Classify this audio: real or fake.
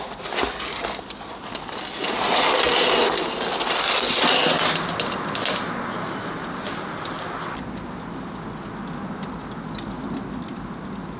real